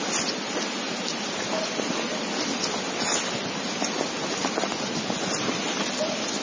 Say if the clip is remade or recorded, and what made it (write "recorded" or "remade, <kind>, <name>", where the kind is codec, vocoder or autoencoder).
recorded